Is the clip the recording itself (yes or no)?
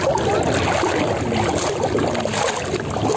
yes